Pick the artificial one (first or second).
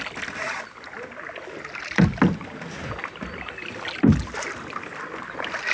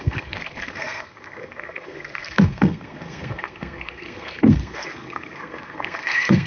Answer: second